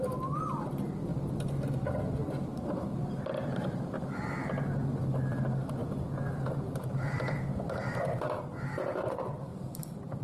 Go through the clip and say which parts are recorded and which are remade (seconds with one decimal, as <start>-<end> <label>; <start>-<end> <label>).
0.0-1.1 recorded; 1.1-1.7 remade; 1.7-5.8 recorded; 5.8-8.4 remade; 8.4-9.5 recorded; 9.5-10.2 remade